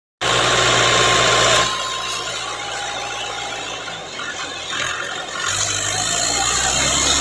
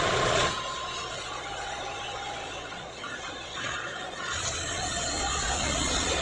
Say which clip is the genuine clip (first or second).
first